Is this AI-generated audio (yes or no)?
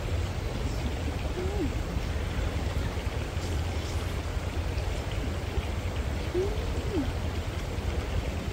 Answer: no